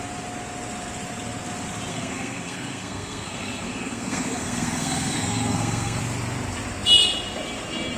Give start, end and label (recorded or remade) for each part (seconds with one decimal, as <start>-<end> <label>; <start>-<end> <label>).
0.0-1.9 recorded; 1.9-6.0 remade; 6.0-8.0 recorded